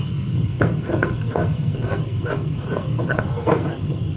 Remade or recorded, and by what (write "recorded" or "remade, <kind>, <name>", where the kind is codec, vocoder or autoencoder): remade, codec, SNAC